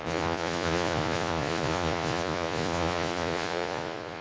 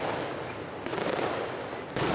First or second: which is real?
second